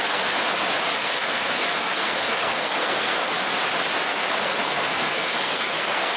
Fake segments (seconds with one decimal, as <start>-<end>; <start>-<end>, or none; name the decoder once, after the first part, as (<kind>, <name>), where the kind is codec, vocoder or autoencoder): 0.0-0.4 (codec, SNAC); 1.0-3.2; 4.1-6.2